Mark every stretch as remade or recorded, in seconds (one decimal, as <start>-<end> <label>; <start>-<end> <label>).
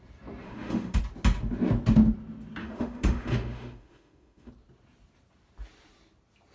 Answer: 0.0-0.4 recorded; 0.4-1.0 remade; 1.0-2.6 recorded; 2.6-4.5 remade; 4.5-6.5 recorded